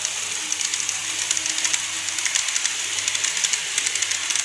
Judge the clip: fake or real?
real